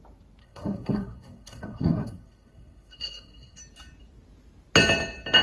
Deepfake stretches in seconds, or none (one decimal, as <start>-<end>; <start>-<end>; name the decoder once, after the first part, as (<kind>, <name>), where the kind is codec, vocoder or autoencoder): 0.4-3.6 (codec, SNAC)